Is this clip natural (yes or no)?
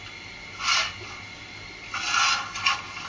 yes